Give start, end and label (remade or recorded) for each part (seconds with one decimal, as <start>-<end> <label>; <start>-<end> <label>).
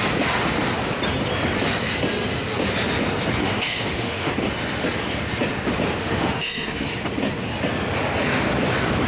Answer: 0.0-3.4 recorded; 3.4-4.3 remade; 4.3-6.0 recorded; 6.0-6.9 remade; 6.9-9.1 recorded